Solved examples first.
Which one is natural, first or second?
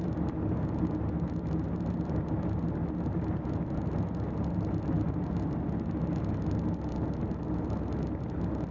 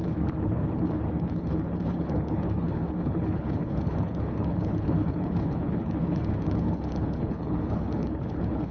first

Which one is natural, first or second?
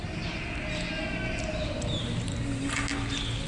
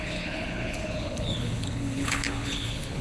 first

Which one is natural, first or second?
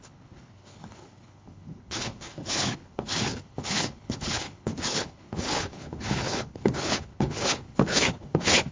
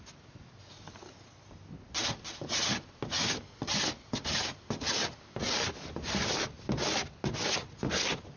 second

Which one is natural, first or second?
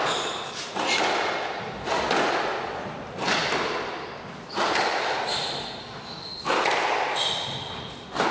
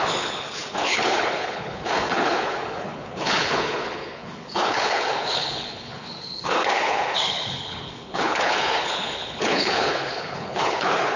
first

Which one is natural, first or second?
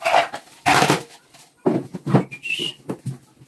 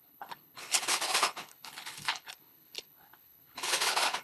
first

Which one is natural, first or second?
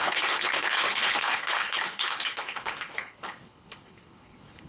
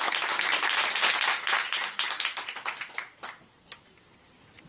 second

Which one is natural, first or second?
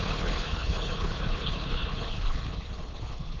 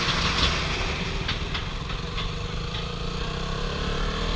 second